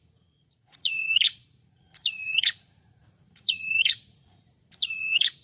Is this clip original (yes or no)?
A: no